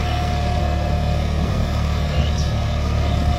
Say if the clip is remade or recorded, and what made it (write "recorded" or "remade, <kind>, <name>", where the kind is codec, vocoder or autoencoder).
remade, codec, SNAC